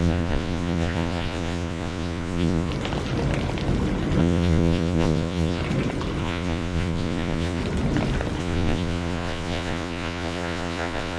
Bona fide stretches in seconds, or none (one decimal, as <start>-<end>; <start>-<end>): 2.7-4.2; 5.6-6.2; 7.6-8.4